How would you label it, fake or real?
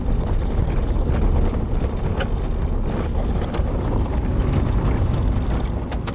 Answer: real